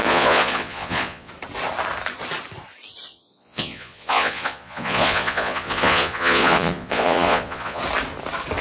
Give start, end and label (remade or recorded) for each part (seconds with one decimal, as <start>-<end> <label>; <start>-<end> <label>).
0.0-1.3 remade; 1.3-3.0 recorded; 3.0-7.8 remade; 7.8-8.6 recorded